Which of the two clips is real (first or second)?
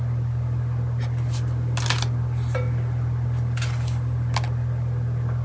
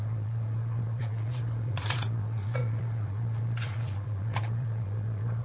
first